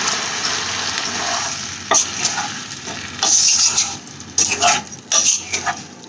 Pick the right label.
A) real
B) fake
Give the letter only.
A